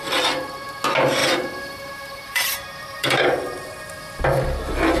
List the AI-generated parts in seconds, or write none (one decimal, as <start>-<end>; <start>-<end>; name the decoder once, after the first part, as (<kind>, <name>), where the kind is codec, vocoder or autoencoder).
1.2-4.2 (vocoder, BigVGAN v2)